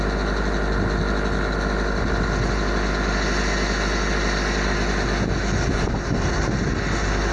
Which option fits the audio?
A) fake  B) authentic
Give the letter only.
B